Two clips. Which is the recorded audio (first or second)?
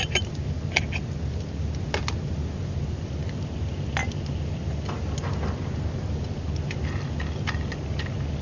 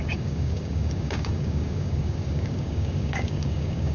first